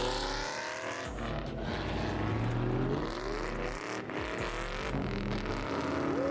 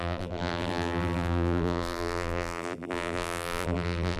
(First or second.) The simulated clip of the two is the second